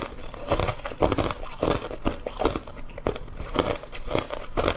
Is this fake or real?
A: real